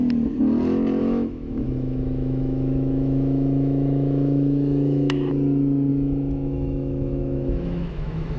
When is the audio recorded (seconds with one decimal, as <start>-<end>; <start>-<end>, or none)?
0.0-1.0; 5.3-5.9